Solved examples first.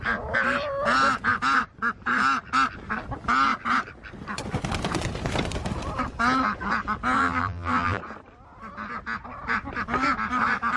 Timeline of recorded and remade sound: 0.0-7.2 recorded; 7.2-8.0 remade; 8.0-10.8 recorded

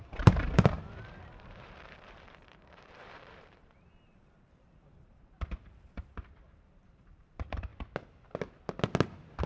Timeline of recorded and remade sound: 0.0-7.7 remade; 7.7-9.5 recorded